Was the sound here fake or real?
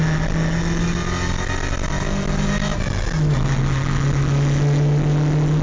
real